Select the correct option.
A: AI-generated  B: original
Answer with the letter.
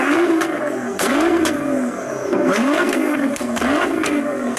A